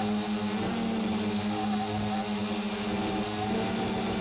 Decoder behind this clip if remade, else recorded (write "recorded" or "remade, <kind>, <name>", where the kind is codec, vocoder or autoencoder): recorded